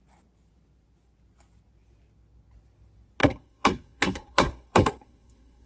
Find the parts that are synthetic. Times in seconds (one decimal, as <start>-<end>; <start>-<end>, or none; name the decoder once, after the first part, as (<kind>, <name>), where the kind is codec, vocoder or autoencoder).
3.2-5.7 (codec, SNAC)